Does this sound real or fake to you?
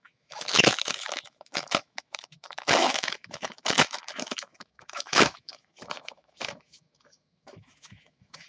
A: fake